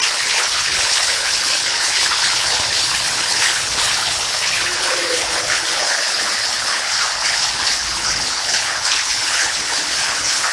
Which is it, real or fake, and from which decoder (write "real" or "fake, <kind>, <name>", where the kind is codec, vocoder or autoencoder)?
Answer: fake, codec, HILCodec